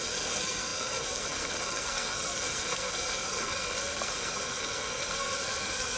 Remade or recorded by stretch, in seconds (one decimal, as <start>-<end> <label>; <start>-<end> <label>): 0.0-6.0 remade